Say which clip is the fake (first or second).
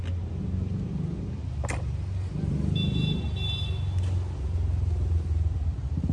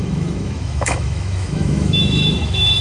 second